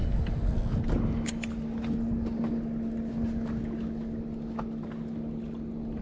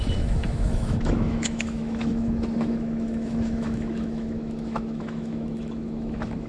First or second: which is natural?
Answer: first